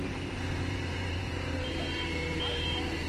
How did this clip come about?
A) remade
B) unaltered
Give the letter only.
A